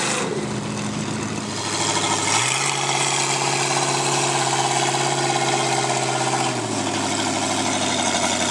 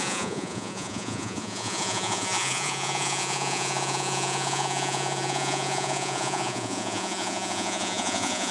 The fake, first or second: second